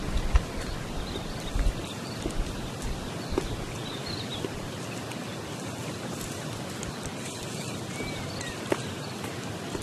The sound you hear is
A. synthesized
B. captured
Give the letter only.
B